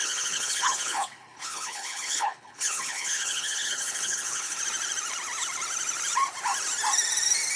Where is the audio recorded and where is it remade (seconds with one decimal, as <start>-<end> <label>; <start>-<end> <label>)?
0.0-4.6 remade; 4.6-7.6 recorded